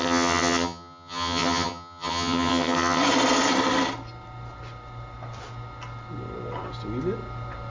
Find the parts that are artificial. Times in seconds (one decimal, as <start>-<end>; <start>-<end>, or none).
0.0-3.0